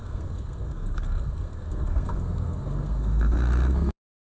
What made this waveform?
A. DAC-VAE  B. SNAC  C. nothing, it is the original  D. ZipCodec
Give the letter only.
B